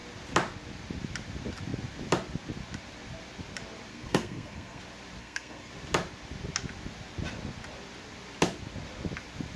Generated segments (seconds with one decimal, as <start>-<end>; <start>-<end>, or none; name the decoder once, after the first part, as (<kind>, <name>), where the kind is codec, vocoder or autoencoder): 3.9-4.8 (codec, SNAC); 5.2-5.7